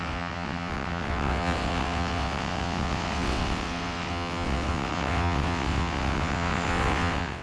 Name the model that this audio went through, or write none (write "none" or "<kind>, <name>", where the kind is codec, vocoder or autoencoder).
vocoder, WaveNeXt